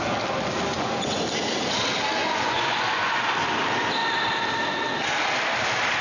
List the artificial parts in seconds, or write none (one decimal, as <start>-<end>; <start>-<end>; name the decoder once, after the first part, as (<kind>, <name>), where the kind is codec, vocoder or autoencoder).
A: 0.7-1.2 (vocoder, Vocos); 2.2-3.3